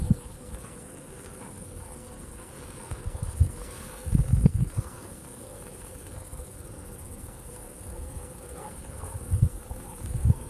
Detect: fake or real fake